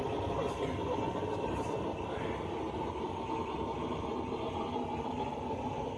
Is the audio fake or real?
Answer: real